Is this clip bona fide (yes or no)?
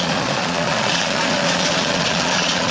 no